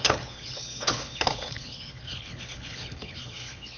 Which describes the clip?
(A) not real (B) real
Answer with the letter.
A